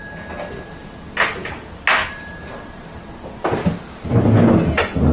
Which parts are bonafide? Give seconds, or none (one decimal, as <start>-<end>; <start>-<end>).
0.0-5.1